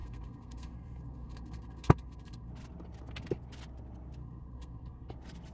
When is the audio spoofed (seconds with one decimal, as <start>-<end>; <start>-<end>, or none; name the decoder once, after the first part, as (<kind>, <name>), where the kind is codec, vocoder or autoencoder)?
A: 0.0-2.5 (codec, SNAC); 4.2-5.1